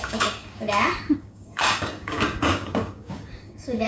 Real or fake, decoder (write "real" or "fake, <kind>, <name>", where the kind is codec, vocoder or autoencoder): fake, codec, DAC